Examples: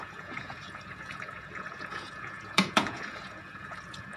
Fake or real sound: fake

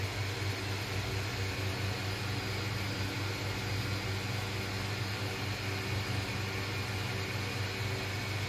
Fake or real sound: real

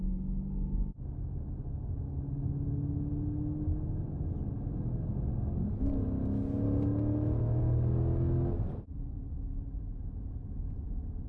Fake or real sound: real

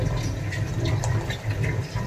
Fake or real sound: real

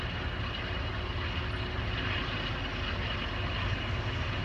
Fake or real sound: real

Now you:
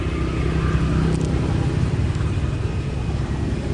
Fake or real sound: real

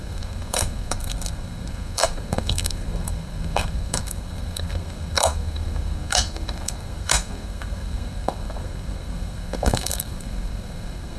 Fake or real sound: fake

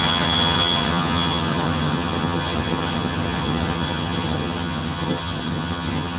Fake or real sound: fake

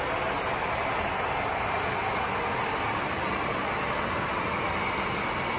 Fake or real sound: real